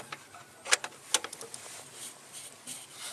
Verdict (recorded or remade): recorded